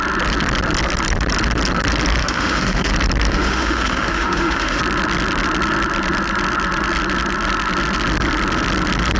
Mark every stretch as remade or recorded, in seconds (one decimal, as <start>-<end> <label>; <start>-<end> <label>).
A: 0.0-2.2 recorded; 2.2-2.9 remade; 2.9-3.3 recorded; 3.3-4.8 remade; 4.8-9.2 recorded